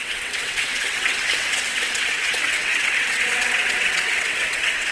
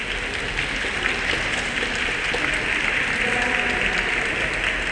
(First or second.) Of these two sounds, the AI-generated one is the first